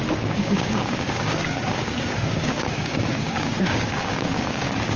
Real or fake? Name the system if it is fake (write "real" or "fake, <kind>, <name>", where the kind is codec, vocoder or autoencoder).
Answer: fake, codec, DAC